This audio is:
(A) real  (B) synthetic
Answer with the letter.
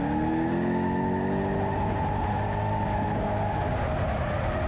A